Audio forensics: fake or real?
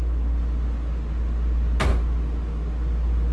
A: real